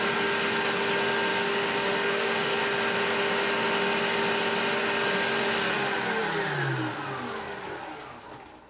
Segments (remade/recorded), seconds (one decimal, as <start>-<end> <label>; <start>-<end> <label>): 0.0-1.3 recorded; 1.3-2.6 remade; 2.6-8.7 recorded